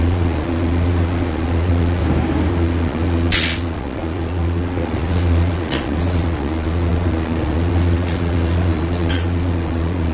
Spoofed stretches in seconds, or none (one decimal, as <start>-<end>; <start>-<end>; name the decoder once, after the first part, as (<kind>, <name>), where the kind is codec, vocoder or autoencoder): 0.0-2.0 (vocoder, Vocos); 2.5-10.1